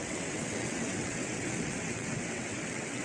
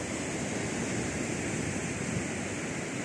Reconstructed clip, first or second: first